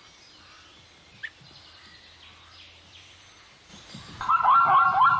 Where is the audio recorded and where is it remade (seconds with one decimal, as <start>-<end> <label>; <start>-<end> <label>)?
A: 0.0-5.2 recorded